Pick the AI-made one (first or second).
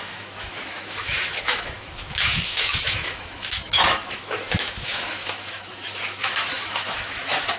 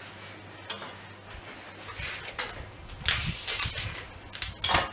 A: first